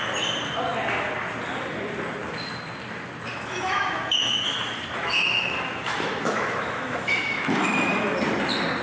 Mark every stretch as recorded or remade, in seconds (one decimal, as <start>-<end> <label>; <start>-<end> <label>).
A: 0.0-3.3 recorded; 3.3-8.2 remade; 8.2-8.8 recorded